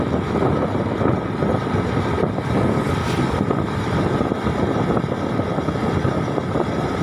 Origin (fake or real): real